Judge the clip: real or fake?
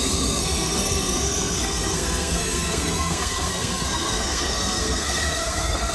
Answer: fake